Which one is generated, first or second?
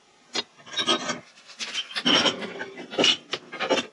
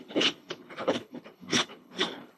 second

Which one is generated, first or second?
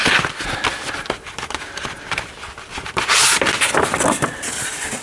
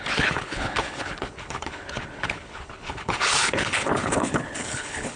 second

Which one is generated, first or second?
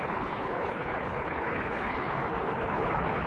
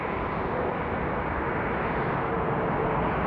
first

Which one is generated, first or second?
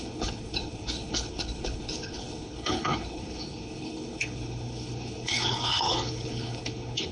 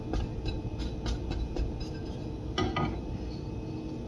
first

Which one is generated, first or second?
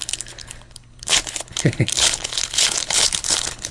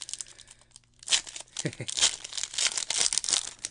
first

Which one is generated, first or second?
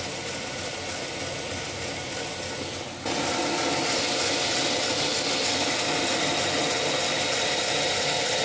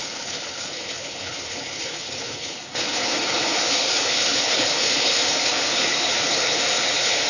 second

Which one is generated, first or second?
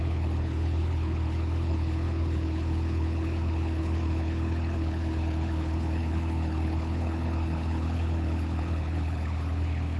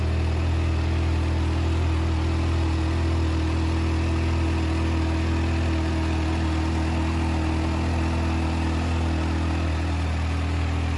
first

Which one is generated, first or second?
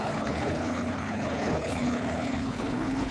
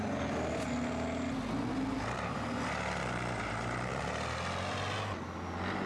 first